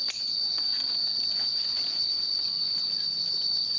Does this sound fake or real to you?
real